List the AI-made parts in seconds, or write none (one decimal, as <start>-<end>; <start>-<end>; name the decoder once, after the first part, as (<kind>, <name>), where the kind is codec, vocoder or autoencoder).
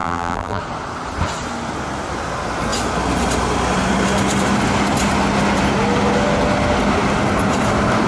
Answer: 0.0-0.6 (vocoder, BigVGAN v2)